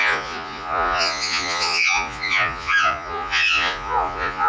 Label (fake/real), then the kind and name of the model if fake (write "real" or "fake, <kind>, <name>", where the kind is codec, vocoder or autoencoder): fake, vocoder, Vocos